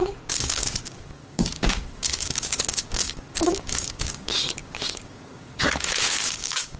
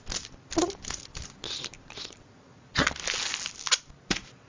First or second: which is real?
second